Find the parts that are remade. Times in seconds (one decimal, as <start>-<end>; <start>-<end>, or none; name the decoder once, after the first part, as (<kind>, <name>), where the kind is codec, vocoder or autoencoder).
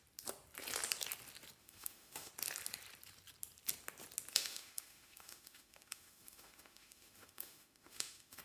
1.6-2.3 (autoencoder, DAC-VAE); 4.3-8.4